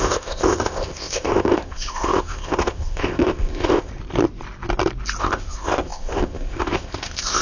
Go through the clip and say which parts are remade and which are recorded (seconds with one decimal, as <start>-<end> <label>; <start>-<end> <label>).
0.0-3.9 remade; 3.9-5.2 recorded; 5.2-7.4 remade